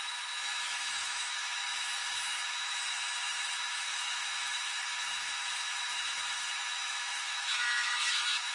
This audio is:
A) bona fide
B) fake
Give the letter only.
B